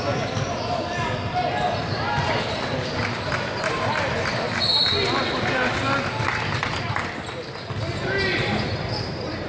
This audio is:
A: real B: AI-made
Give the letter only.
A